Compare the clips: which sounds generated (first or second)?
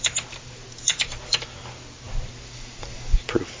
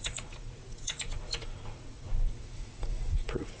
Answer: second